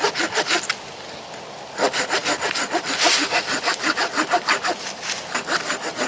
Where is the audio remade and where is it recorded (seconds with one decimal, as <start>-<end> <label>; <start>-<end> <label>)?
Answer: 0.0-6.1 recorded